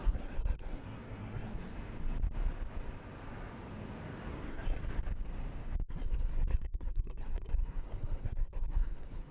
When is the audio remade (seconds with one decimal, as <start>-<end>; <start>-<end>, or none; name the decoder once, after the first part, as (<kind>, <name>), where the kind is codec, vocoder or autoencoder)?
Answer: 0.0-1.7 (codec, SNAC); 4.3-4.8; 5.9-9.3